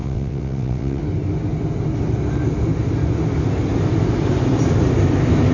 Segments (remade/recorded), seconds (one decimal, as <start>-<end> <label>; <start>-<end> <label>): 0.0-1.0 remade; 1.0-5.5 recorded